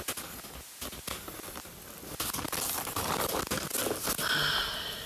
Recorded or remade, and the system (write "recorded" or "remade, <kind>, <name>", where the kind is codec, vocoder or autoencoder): recorded